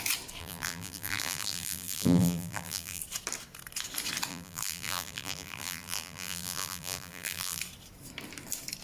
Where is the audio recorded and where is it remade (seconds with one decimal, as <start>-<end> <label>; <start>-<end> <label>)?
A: 0.0-0.4 recorded; 0.4-3.0 remade; 3.0-4.3 recorded; 4.3-7.6 remade; 7.6-8.8 recorded